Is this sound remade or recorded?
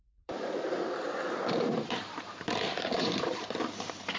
remade